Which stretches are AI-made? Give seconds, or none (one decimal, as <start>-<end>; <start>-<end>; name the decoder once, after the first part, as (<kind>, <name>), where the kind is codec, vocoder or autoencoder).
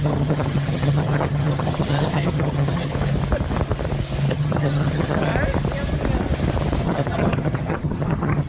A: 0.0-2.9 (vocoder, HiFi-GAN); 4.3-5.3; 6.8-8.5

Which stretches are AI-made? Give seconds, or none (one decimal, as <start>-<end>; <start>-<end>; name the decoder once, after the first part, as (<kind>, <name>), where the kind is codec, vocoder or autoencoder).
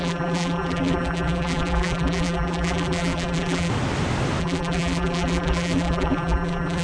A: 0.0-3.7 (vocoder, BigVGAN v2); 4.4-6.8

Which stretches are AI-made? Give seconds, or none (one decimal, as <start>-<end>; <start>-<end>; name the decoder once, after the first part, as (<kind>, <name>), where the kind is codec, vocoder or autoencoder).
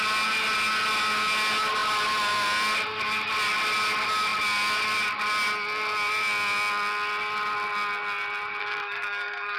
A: 8.6-9.6 (codec, SNAC)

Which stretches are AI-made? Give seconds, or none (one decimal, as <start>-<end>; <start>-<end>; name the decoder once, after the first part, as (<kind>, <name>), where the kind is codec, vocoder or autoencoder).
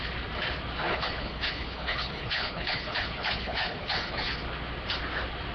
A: 0.9-4.2 (codec, HILCodec)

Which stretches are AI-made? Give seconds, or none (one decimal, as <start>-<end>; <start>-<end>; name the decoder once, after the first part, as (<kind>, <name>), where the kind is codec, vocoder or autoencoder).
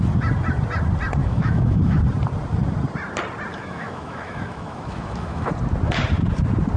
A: 1.2-2.0 (autoencoder, DAC-VAE); 3.5-5.5